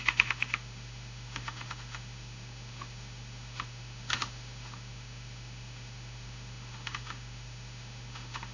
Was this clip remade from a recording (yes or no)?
yes